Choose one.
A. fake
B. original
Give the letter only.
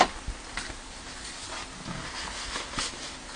B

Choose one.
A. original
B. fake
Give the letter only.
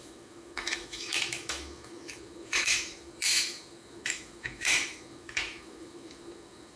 B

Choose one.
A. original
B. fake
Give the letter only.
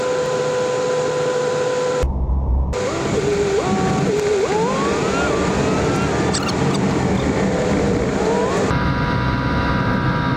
A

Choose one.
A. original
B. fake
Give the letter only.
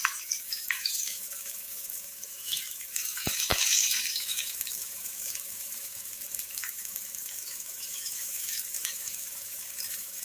B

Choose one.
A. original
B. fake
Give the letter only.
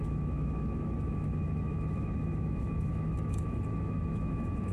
B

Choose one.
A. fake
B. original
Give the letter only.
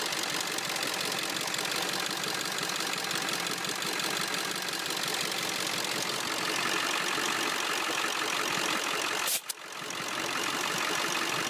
B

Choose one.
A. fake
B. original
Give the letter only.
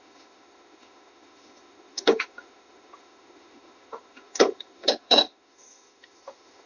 A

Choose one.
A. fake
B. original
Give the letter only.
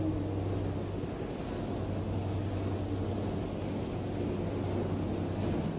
B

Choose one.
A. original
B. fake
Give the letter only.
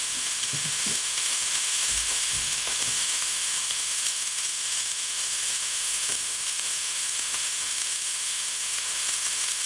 B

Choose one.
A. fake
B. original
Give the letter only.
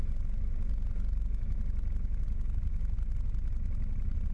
B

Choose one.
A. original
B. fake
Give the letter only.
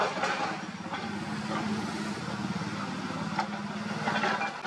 A